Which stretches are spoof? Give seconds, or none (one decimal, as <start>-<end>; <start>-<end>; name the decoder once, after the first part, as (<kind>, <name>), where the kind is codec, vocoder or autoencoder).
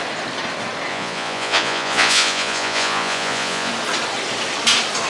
0.9-3.7 (vocoder, Vocos)